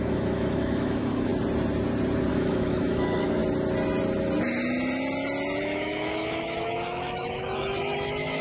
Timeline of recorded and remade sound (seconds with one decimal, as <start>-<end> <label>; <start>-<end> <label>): 0.0-1.3 remade; 1.3-2.3 recorded; 2.3-3.4 remade; 3.4-5.6 recorded; 5.6-8.4 remade